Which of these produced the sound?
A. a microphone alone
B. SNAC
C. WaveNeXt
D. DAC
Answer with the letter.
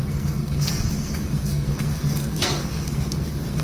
B